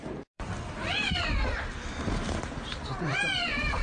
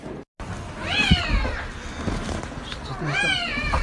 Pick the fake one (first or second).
first